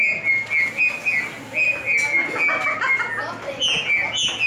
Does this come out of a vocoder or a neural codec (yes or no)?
no